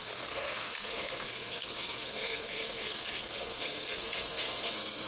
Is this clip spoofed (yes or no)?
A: yes